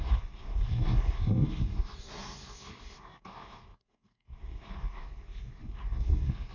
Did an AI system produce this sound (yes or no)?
yes